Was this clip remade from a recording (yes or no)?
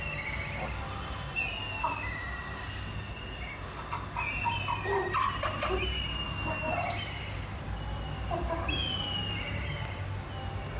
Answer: no